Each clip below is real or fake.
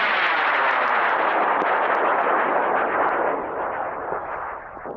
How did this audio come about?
real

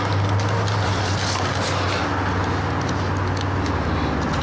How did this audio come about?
real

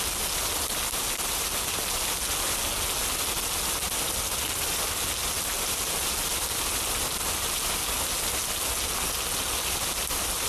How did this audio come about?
real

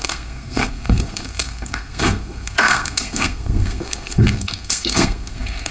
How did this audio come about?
fake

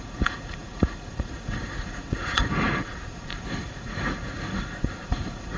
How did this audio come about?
fake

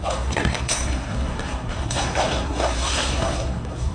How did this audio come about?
fake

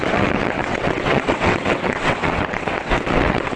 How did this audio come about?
fake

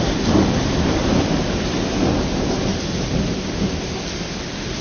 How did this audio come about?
real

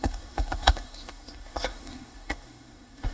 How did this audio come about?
fake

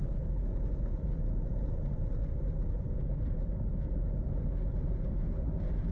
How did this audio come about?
real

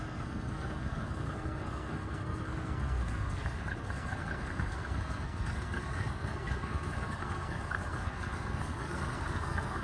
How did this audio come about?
fake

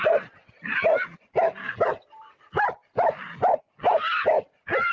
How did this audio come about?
fake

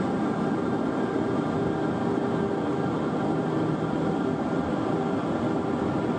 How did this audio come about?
real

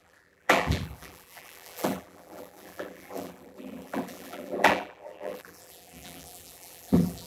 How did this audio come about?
fake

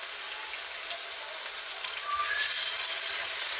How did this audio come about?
real